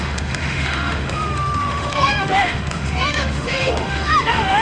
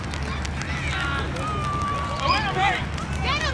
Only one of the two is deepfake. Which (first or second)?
first